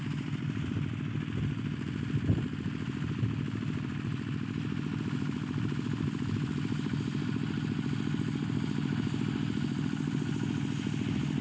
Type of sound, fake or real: real